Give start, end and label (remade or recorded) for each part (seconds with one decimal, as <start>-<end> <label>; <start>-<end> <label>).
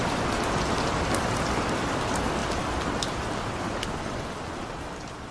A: 0.0-5.3 recorded